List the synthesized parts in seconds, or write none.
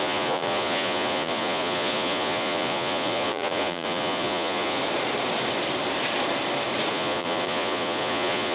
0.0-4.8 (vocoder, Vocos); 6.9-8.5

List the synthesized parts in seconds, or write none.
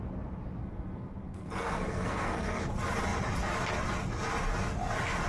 0.6-2.7 (codec, SNAC)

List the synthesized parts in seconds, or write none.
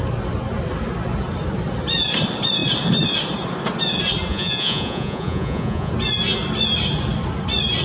4.3-5.9 (vocoder, Vocos)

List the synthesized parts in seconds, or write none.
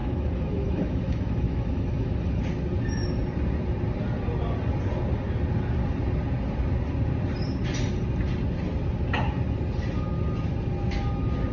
0.0-2.4 (autoencoder, DAC-VAE)